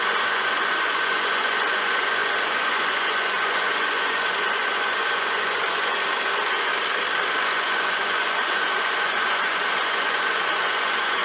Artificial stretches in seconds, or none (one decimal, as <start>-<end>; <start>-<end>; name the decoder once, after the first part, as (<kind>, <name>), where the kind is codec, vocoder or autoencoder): 0.0-6.7 (vocoder, Vocos); 7.3-11.2